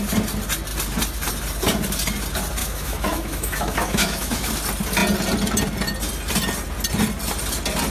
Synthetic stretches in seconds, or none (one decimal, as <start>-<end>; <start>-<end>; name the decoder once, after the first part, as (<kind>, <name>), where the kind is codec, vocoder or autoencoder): 2.6-4.5 (autoencoder, DAC-VAE)